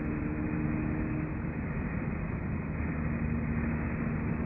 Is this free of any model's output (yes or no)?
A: yes